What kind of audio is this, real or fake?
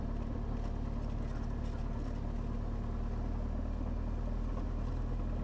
real